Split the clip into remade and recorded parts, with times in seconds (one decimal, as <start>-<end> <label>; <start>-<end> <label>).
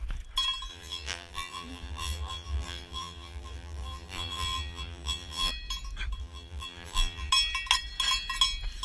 0.0-0.7 recorded; 0.7-5.5 remade; 5.5-6.2 recorded; 6.2-7.3 remade; 7.3-8.8 recorded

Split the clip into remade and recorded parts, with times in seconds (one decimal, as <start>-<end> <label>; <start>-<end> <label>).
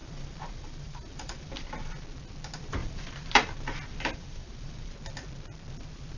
0.0-2.0 remade; 2.0-2.8 recorded; 2.8-4.9 remade; 4.9-6.2 recorded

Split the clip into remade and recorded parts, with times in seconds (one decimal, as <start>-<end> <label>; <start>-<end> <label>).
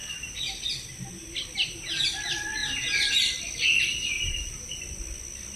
0.0-1.6 recorded; 1.6-2.1 remade; 2.1-2.6 recorded; 2.6-3.1 remade; 3.1-3.9 recorded; 3.9-4.8 remade; 4.8-5.6 recorded